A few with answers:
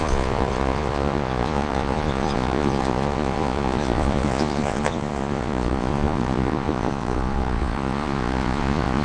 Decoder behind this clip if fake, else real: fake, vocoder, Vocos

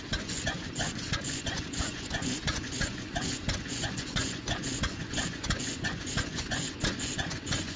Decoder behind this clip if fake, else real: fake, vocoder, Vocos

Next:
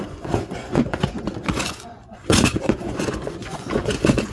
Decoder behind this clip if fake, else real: fake, vocoder, Vocos